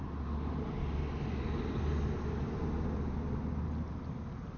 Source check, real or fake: real